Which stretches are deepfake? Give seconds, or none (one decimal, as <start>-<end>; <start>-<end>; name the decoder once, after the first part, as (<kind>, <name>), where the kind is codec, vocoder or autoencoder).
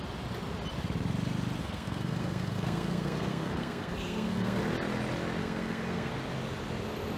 1.6-4.6 (codec, SNAC); 5.4-6.1